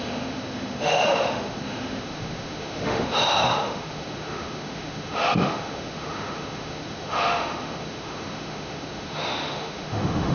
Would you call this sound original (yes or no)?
no